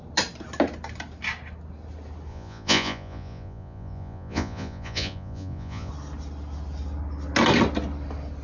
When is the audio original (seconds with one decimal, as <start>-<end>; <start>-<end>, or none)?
0.0-2.3; 5.9-8.4